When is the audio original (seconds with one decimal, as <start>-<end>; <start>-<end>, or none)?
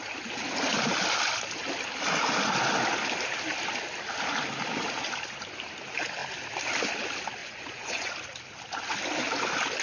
0.0-7.4; 8.1-9.8